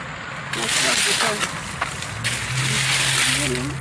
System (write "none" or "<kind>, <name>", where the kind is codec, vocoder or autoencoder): none